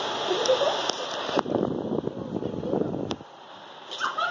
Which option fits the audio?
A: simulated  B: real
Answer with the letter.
B